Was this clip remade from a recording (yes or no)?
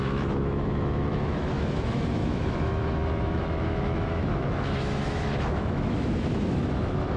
yes